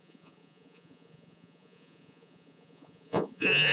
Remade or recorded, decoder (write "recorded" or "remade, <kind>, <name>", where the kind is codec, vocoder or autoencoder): remade, vocoder, Vocos